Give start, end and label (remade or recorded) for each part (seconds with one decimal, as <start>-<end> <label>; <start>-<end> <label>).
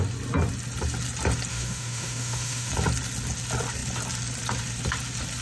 0.0-1.5 recorded; 1.5-2.7 remade; 2.7-5.4 recorded